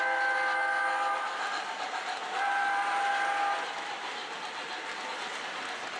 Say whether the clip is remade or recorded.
recorded